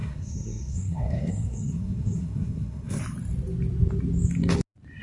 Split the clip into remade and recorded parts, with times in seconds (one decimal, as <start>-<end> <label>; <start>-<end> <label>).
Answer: 0.0-3.0 remade; 3.0-5.0 recorded